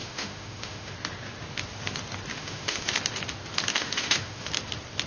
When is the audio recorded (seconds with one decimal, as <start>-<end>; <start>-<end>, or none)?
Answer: 0.9-2.3; 2.9-3.7; 4.5-5.1